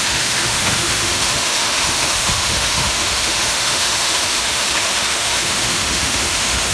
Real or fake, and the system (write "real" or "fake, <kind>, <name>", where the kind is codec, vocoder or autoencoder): fake, autoencoder, DAC-VAE